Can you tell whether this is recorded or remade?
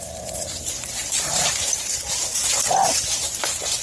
remade